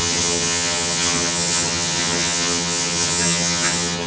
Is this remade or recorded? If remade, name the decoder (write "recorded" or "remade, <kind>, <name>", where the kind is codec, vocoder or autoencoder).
remade, vocoder, HiFi-GAN